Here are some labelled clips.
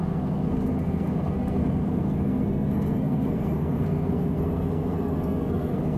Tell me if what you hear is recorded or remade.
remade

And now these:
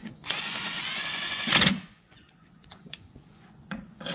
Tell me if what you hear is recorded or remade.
remade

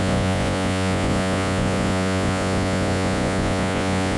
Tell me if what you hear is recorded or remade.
remade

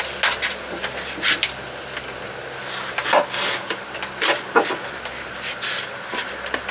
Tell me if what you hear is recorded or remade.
recorded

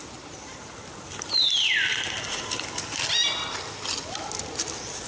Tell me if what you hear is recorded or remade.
recorded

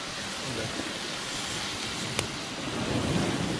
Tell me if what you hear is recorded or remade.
recorded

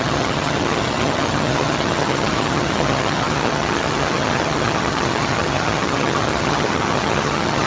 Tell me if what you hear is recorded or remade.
remade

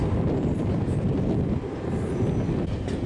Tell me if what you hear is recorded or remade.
recorded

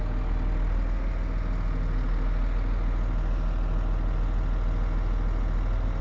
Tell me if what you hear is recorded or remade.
recorded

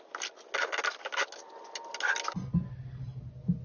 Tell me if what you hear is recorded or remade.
recorded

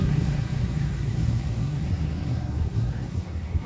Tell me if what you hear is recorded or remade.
remade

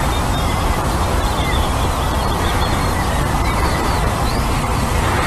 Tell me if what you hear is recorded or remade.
remade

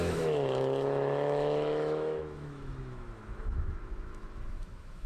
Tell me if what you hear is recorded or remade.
remade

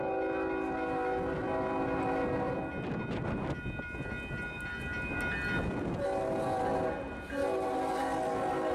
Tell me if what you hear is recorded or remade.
recorded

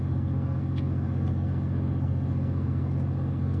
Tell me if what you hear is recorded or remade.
remade